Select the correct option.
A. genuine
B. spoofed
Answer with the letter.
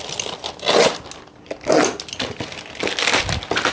A